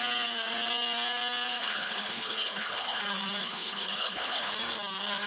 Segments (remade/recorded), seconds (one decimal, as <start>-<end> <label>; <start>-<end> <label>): 0.0-1.6 recorded; 1.6-3.0 remade; 3.0-3.4 recorded; 3.4-4.5 remade; 4.5-5.3 recorded